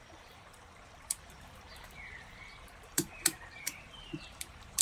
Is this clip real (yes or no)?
no